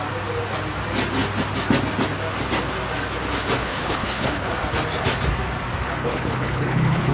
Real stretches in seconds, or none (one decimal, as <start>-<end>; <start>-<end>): 0.0-3.6; 4.5-6.0